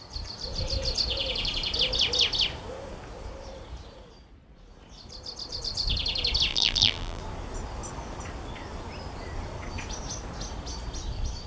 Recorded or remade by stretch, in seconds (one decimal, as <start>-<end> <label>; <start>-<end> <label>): 0.0-6.5 recorded; 6.5-7.2 remade; 7.2-11.5 recorded